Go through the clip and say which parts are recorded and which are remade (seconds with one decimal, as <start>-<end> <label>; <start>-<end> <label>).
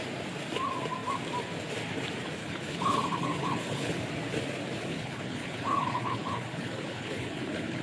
0.0-2.4 recorded; 2.4-4.0 remade; 4.0-4.8 recorded; 4.8-7.8 remade